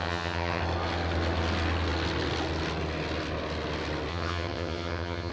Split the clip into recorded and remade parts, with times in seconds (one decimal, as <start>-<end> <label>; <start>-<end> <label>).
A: 0.0-0.6 remade; 0.6-4.1 recorded; 4.1-5.3 remade

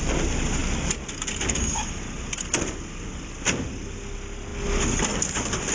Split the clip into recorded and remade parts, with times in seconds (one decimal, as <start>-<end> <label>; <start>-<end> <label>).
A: 0.0-5.7 recorded

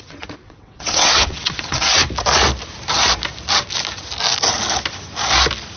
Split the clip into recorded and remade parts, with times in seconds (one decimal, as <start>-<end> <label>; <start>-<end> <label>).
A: 0.0-2.0 remade; 2.0-5.8 recorded

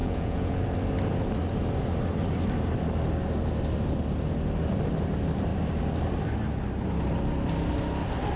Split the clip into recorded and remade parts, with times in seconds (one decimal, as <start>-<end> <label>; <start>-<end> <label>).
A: 0.0-0.6 remade; 0.6-8.4 recorded

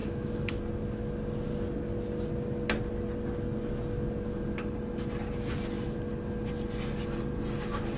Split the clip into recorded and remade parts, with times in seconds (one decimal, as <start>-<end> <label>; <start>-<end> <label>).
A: 0.0-0.6 remade; 0.6-8.0 recorded

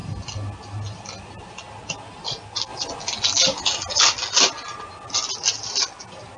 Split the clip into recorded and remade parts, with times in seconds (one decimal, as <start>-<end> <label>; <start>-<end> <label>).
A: 0.0-6.4 recorded